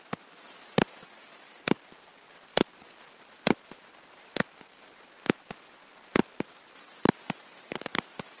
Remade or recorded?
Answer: recorded